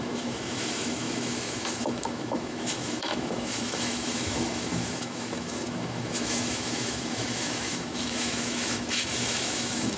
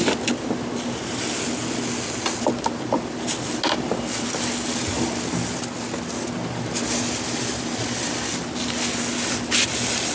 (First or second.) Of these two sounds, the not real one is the first